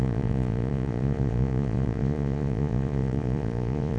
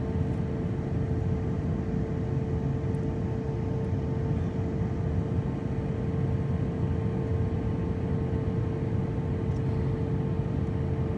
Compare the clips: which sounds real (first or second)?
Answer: second